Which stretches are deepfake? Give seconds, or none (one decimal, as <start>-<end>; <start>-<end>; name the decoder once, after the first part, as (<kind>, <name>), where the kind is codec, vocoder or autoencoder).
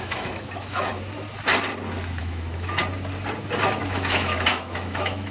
0.0-0.9 (autoencoder, DAC-VAE); 2.2-2.8; 3.8-5.3